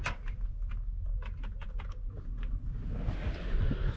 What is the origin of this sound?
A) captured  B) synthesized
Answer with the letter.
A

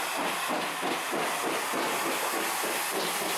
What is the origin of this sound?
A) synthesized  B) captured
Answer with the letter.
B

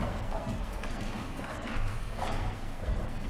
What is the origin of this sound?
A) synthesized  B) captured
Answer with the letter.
A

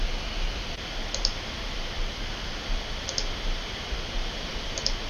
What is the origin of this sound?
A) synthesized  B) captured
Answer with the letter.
A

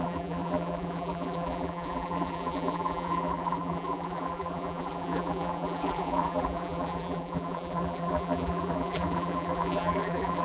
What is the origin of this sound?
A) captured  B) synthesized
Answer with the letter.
B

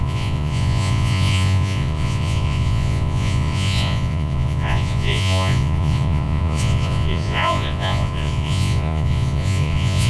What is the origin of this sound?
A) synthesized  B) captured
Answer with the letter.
A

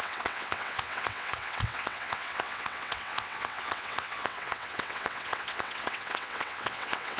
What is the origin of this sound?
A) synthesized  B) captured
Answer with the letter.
A